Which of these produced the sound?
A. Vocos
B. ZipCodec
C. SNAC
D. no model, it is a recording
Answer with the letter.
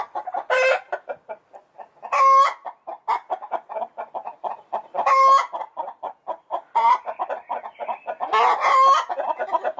D